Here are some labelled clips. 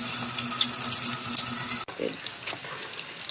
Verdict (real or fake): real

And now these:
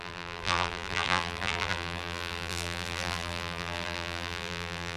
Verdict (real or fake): fake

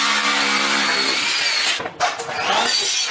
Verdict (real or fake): real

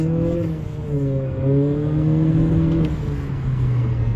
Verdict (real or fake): fake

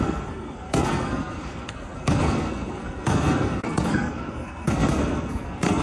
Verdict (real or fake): fake